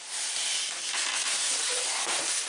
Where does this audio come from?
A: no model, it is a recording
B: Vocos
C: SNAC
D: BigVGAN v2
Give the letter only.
A